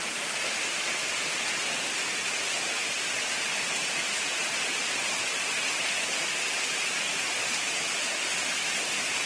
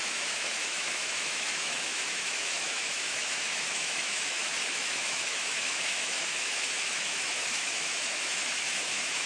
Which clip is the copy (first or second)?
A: second